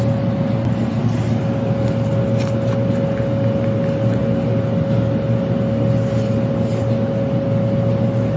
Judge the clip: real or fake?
real